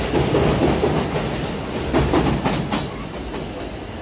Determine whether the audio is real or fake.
real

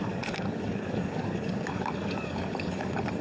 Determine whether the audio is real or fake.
fake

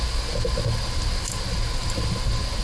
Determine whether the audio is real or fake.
real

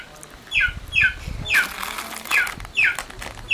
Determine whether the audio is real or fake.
real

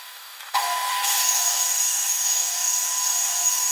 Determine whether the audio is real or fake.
fake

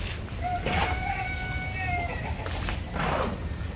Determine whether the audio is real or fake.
real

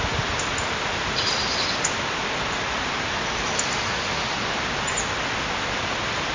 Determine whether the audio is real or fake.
real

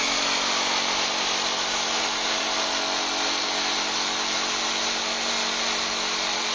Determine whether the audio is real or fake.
real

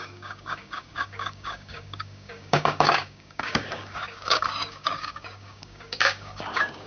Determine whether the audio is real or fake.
fake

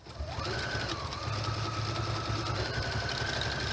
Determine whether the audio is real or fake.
real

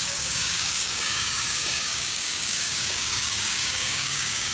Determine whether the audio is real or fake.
fake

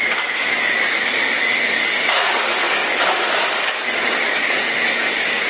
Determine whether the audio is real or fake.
fake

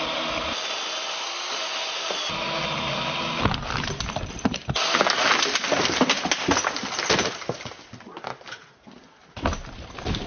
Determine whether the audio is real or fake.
real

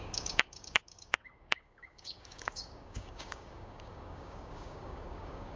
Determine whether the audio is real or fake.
fake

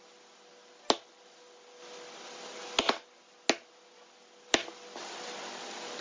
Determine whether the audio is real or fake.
real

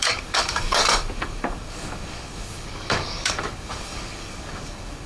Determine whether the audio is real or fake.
fake